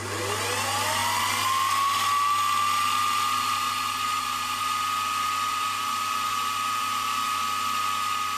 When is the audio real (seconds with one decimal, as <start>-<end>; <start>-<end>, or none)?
0.0-5.5; 7.4-8.4

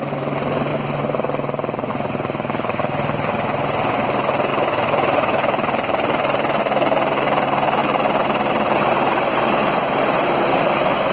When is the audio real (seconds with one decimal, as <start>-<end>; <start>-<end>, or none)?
0.7-1.9

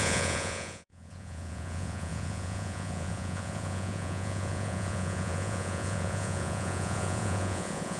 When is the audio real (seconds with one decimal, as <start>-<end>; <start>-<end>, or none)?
none

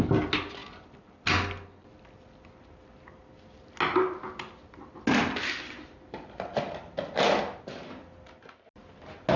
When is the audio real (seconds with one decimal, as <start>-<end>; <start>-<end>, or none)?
0.0-9.4

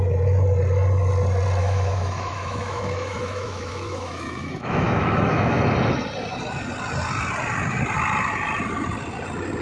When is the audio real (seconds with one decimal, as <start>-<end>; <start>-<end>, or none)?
0.0-1.6; 5.6-9.6

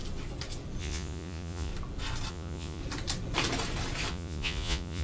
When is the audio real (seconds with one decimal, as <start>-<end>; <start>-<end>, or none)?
0.0-0.8; 1.7-2.3; 2.8-4.1

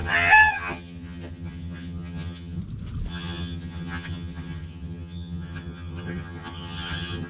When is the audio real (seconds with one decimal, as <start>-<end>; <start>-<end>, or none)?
2.6-3.1

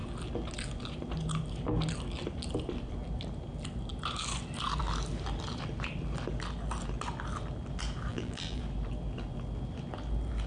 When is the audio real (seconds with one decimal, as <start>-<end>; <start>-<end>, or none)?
0.0-8.1; 8.6-10.5